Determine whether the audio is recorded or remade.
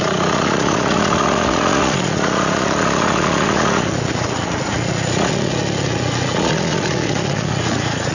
remade